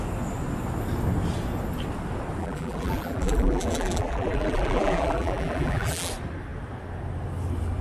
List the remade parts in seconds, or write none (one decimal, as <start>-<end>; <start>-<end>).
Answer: 2.4-6.1